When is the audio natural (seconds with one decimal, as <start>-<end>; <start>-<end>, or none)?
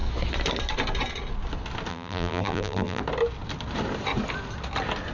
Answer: 0.0-1.9; 3.0-5.1